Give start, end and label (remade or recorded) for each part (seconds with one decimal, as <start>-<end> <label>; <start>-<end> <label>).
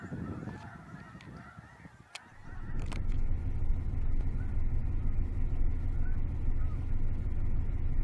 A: 0.0-8.0 recorded